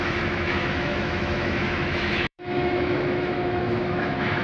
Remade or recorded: remade